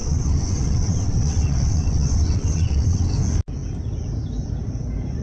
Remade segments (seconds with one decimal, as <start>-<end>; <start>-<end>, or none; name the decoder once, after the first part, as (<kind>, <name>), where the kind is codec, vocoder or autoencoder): 0.0-3.1 (vocoder, WaveNeXt)